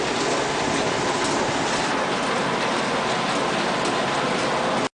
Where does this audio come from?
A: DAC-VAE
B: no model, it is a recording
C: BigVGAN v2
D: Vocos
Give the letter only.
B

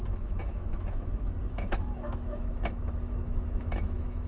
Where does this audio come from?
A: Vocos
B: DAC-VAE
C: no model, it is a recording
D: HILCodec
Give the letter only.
B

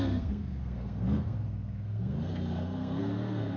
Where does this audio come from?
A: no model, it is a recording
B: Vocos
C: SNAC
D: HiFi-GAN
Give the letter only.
C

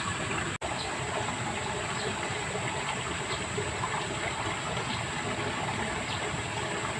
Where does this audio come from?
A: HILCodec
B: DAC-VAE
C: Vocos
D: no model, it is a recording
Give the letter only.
D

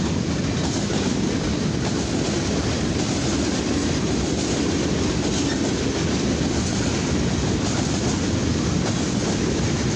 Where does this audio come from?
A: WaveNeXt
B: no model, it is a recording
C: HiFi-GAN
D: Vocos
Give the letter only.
B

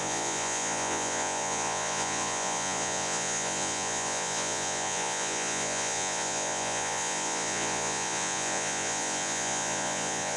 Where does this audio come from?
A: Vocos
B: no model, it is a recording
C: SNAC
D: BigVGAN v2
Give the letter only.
A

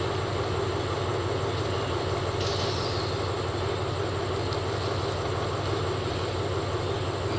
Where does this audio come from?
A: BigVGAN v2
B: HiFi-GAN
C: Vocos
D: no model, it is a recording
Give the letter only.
D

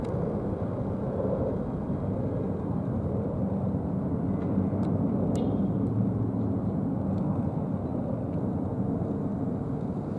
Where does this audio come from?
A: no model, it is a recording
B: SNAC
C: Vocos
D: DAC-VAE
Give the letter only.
A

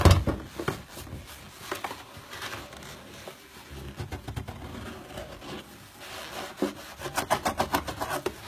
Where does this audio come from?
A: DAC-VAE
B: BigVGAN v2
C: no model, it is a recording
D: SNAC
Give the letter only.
C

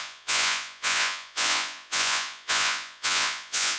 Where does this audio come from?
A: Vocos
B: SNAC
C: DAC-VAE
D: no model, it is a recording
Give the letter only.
A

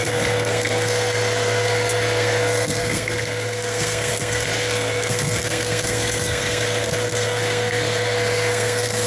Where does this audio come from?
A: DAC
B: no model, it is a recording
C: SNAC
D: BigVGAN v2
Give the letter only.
C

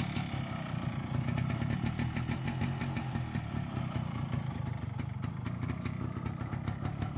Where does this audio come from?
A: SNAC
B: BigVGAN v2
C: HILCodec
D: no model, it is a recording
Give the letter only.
D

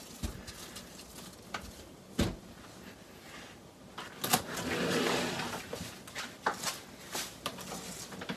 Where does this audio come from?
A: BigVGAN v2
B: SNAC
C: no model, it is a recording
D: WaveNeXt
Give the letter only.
C